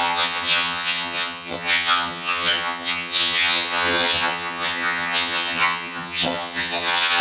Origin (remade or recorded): remade